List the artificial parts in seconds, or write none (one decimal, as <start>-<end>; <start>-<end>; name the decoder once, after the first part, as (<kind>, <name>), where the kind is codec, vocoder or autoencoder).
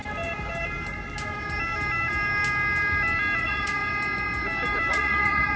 3.4-3.8 (vocoder, Vocos); 4.9-5.6